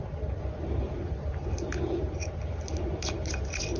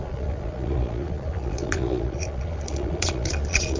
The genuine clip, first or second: first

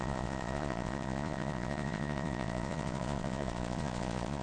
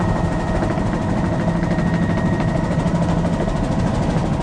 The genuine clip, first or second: second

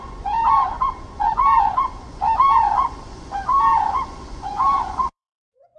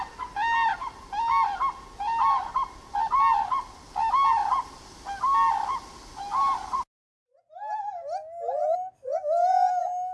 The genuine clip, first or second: second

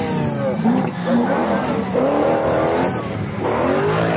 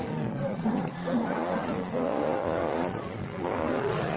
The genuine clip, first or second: first